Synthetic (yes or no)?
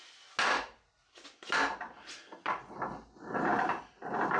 no